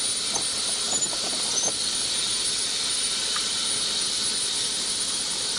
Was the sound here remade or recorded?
recorded